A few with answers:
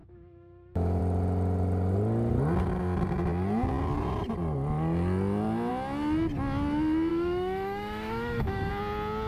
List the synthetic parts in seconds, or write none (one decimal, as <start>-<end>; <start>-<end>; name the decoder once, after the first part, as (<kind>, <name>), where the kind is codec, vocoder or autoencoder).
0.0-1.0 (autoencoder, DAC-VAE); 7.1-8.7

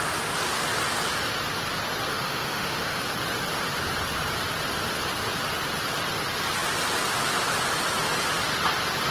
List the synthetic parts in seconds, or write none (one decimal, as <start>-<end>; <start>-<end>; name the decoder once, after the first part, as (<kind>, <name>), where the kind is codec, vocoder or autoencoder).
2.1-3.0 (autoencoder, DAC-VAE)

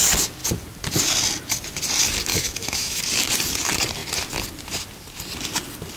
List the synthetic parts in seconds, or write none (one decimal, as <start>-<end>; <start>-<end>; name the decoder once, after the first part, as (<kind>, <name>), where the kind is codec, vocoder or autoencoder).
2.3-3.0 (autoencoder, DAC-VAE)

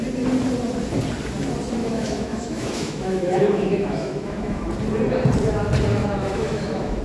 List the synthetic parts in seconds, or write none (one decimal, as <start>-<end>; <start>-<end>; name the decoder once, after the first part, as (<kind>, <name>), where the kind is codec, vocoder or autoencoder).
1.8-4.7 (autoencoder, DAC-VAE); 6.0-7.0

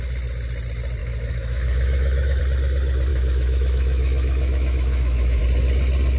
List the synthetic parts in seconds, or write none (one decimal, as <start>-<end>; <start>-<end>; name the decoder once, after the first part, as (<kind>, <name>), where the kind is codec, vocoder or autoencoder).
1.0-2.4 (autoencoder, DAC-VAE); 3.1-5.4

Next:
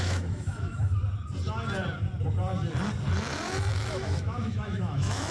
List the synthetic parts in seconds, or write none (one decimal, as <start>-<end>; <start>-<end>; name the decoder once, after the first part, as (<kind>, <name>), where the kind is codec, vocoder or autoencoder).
0.0-0.9 (autoencoder, DAC-VAE); 3.7-5.3

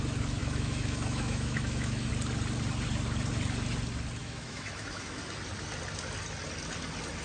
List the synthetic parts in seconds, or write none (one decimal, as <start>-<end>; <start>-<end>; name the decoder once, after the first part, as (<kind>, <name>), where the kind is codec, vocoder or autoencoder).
0.4-2.1 (autoencoder, DAC-VAE); 4.2-5.2